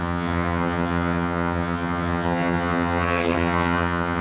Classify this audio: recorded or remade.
remade